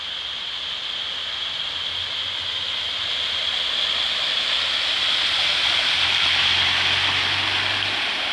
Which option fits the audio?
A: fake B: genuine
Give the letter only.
B